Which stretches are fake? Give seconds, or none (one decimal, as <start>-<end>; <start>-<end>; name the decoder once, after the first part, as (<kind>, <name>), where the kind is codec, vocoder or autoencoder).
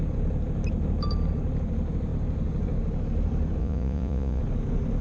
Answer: 3.6-4.4 (vocoder, Vocos)